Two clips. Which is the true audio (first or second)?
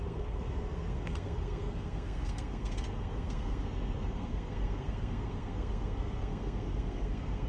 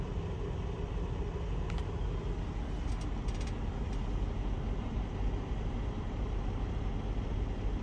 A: second